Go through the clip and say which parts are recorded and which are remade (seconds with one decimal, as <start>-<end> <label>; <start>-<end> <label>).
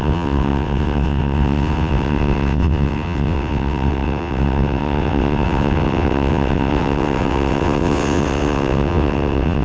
0.0-9.6 remade